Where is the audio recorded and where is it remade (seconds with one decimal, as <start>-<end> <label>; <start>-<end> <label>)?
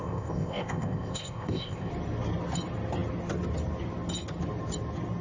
0.0-1.9 remade; 1.9-5.2 recorded